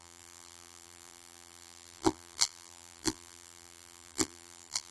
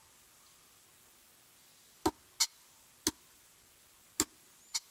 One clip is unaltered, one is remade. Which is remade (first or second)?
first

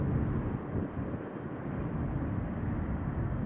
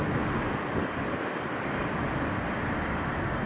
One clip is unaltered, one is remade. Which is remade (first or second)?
second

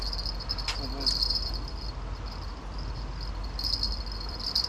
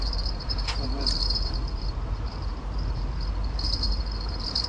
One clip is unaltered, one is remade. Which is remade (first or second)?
second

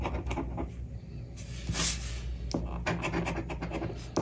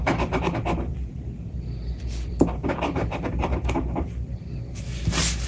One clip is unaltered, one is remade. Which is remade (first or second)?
second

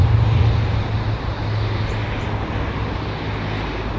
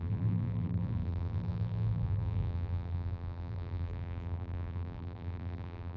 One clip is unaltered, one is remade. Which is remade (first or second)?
second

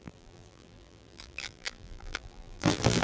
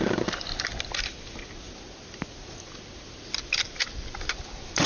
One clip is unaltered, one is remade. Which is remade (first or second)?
first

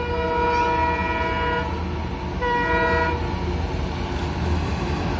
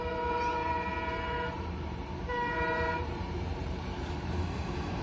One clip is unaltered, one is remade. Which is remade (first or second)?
second